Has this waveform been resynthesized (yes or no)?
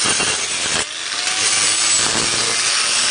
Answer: no